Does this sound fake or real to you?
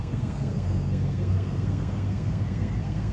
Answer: fake